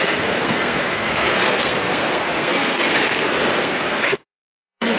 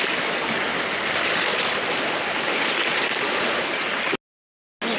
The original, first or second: second